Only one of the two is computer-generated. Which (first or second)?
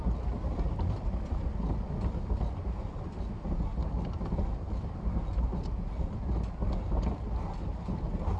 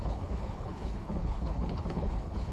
second